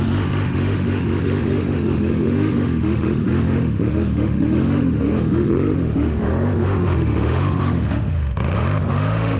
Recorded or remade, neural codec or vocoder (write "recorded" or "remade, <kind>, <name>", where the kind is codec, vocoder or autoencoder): remade, autoencoder, DAC-VAE